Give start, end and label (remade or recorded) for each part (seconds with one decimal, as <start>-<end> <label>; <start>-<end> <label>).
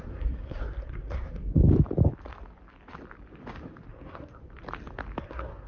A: 0.0-1.6 remade; 1.6-3.9 recorded; 3.9-4.4 remade; 4.4-5.2 recorded; 5.2-5.7 remade